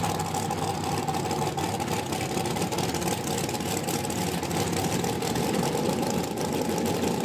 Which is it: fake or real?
real